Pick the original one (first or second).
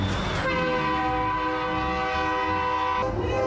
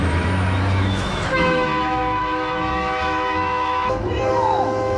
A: first